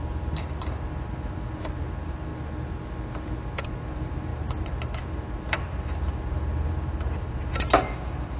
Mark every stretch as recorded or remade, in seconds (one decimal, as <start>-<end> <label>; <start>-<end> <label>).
0.0-2.3 remade; 2.3-3.6 recorded; 3.6-8.4 remade